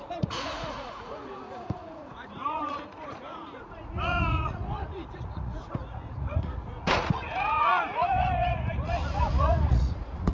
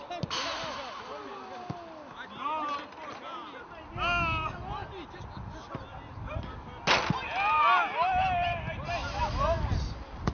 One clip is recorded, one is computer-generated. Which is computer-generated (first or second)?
first